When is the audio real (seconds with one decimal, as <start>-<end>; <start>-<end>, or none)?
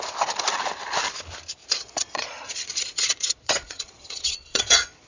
0.0-1.6